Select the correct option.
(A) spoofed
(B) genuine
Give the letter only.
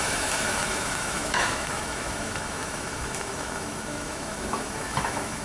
A